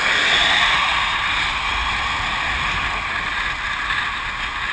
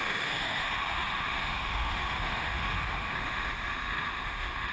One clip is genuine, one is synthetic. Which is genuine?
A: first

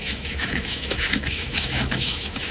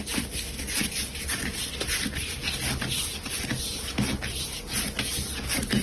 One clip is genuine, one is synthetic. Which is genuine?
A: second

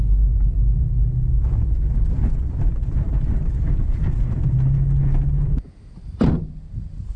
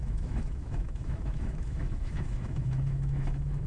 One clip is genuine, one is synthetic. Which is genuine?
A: first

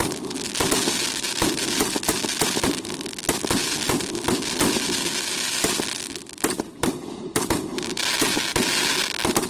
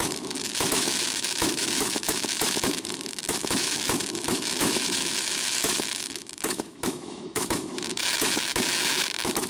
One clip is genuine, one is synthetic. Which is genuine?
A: first